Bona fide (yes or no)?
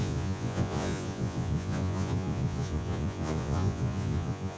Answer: no